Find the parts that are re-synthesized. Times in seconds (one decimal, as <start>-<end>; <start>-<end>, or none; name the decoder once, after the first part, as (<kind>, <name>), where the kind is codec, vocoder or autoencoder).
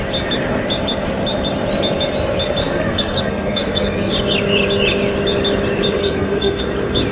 2.6-4.1 (codec, SNAC); 6.0-6.6